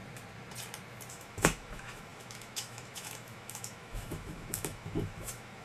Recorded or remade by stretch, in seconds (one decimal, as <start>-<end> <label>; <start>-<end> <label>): 0.0-1.1 recorded; 1.1-5.6 remade